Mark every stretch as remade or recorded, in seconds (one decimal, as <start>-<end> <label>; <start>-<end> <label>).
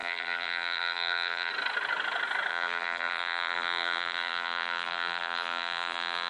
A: 0.0-1.5 remade; 1.5-2.5 recorded; 2.5-6.3 remade